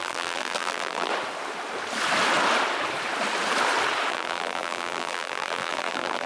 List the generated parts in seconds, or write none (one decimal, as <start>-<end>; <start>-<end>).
0.0-1.1; 4.1-6.3